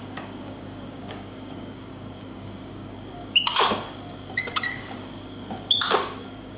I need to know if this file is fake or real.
fake